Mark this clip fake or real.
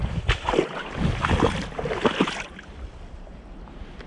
real